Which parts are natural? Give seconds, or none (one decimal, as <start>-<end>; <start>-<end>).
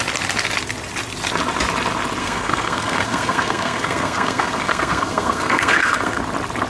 0.0-2.2; 6.2-6.7